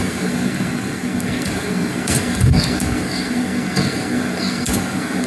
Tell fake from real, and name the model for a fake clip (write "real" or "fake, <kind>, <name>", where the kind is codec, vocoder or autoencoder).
fake, codec, SNAC